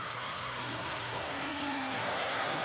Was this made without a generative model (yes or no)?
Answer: no